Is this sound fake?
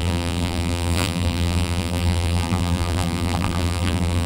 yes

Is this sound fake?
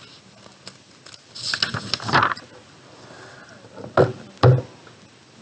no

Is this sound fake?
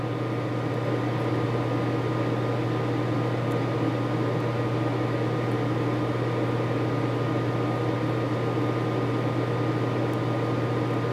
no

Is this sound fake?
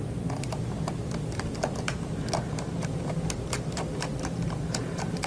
yes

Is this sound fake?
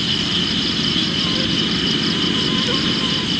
no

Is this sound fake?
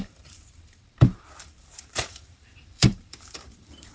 yes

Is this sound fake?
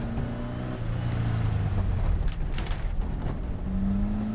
no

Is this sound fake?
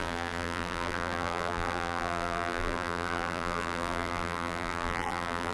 yes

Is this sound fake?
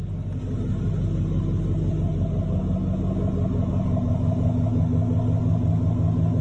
no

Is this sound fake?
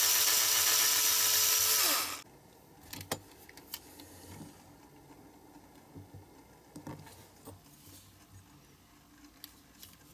no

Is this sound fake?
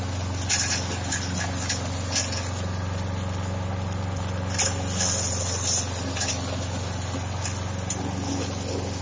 no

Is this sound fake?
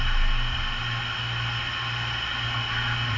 no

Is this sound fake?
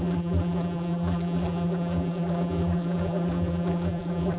yes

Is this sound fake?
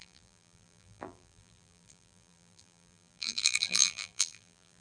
yes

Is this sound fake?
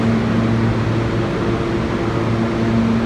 no